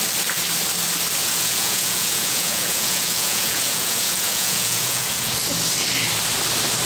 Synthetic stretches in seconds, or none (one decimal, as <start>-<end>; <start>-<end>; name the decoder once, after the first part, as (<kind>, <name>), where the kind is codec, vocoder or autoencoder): 1.2-5.3 (vocoder, Vocos)